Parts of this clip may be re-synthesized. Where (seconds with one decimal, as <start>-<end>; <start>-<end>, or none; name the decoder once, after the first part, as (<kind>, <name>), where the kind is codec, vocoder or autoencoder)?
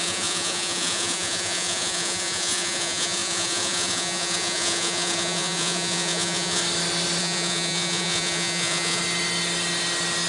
0.0-6.6 (vocoder, Vocos); 7.2-9.0